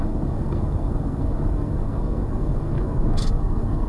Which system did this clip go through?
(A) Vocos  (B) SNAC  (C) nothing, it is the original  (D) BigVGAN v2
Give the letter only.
B